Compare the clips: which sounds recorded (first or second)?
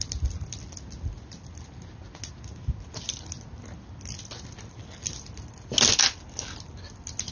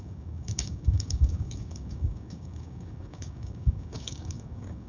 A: first